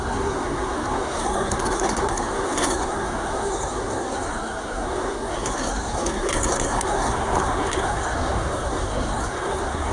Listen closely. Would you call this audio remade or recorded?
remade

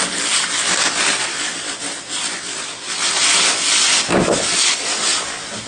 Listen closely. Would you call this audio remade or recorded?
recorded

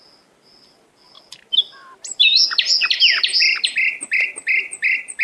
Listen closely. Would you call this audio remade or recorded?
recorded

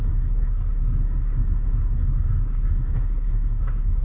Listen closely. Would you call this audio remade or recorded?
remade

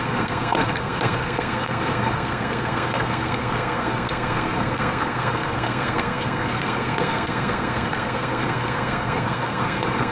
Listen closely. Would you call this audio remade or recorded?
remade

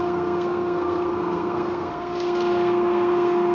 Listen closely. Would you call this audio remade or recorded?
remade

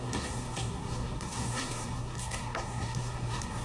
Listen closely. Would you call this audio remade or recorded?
remade